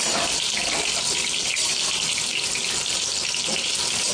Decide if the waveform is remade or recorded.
recorded